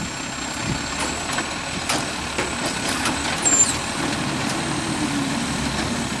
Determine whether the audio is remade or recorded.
recorded